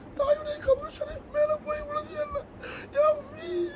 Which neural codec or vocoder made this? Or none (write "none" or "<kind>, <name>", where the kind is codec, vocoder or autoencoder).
vocoder, BigVGAN v2